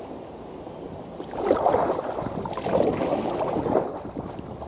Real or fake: real